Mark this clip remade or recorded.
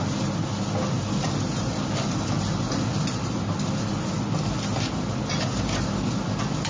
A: recorded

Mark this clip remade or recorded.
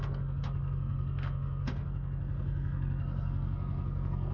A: remade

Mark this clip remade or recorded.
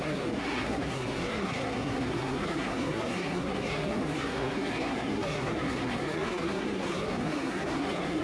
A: remade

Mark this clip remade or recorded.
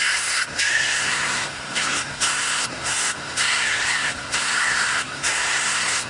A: remade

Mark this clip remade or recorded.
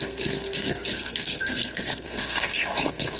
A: remade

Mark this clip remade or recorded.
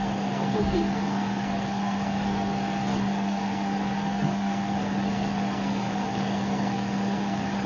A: remade